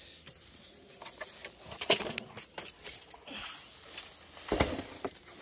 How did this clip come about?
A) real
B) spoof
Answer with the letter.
A